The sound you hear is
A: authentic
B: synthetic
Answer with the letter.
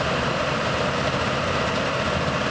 B